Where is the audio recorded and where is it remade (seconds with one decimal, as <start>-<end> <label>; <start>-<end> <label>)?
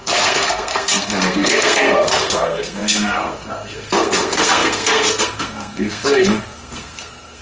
0.0-7.4 remade